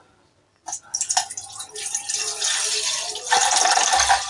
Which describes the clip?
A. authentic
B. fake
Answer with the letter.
A